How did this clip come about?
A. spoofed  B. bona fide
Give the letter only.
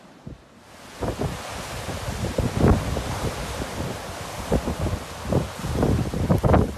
B